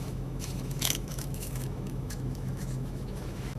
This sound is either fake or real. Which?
fake